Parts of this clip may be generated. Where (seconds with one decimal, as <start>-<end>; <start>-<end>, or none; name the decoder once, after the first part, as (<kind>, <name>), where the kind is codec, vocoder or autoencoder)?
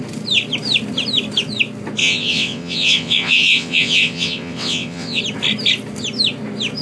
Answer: 2.0-5.2 (vocoder, WaveNeXt)